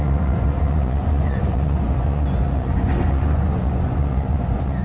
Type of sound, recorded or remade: remade